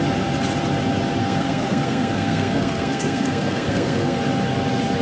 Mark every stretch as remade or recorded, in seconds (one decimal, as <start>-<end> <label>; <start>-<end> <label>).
0.0-1.2 recorded; 1.2-4.2 remade; 4.2-5.0 recorded